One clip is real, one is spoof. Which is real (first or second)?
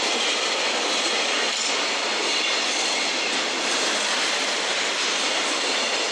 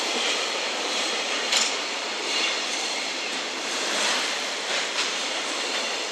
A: first